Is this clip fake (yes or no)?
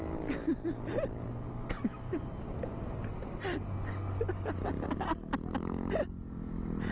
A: no